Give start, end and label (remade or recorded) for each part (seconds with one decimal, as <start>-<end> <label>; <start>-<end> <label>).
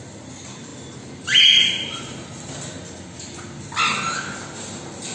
0.0-5.1 recorded